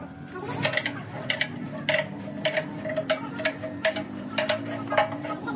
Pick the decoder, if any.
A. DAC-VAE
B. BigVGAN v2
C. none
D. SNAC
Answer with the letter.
C